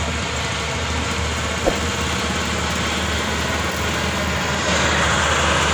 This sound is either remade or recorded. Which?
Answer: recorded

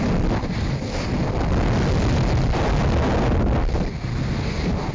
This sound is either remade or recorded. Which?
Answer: recorded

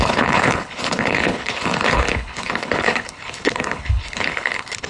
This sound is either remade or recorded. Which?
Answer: remade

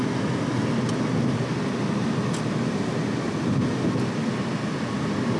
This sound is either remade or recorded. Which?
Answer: recorded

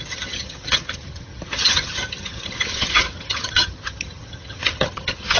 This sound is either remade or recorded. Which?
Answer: remade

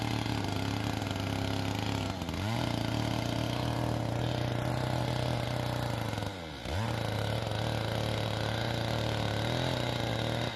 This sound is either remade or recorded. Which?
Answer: recorded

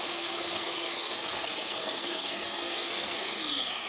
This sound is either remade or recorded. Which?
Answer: remade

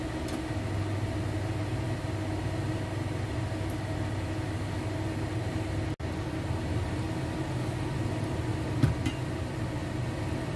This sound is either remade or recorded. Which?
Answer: recorded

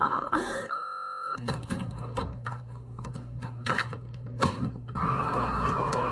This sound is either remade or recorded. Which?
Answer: remade